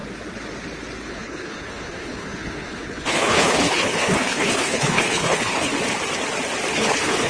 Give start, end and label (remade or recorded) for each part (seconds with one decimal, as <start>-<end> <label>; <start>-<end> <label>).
0.0-1.1 recorded; 1.1-5.7 remade; 5.7-6.7 recorded; 6.7-7.3 remade